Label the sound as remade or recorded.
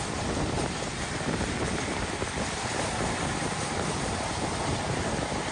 remade